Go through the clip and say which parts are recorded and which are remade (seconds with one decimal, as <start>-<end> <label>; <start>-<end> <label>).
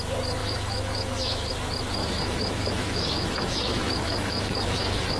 0.0-0.4 recorded; 0.4-1.5 remade; 1.5-2.0 recorded; 2.0-5.2 remade